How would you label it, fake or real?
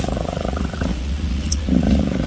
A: fake